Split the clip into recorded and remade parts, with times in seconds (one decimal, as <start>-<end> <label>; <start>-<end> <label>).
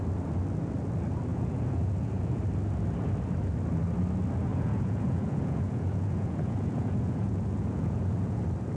0.0-1.3 recorded; 1.3-2.4 remade; 2.4-4.5 recorded; 4.5-8.4 remade; 8.4-8.8 recorded